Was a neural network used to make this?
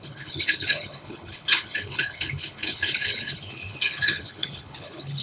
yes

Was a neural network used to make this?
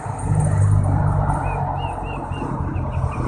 no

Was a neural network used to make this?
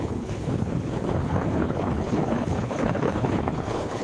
yes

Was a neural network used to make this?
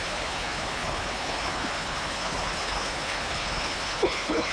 yes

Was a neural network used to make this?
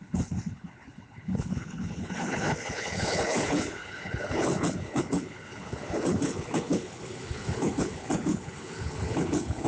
yes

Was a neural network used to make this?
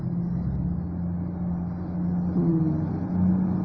no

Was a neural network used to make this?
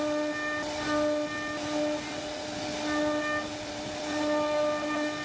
no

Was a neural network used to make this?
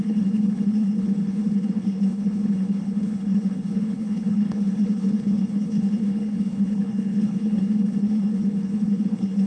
yes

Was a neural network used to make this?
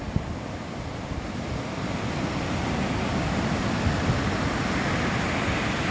no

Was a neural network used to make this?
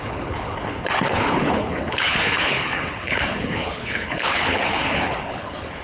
yes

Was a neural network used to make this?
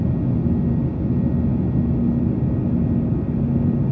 no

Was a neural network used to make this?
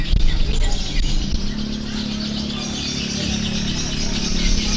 no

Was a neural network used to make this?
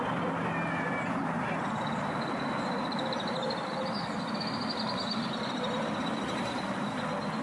no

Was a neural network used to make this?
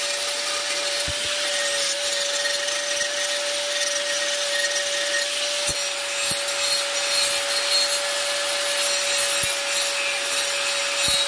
no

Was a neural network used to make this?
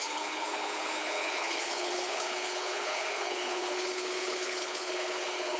yes